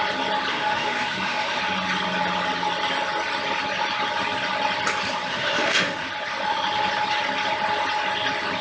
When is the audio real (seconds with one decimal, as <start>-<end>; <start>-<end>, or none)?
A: 0.0-0.5; 1.6-5.3; 6.1-8.6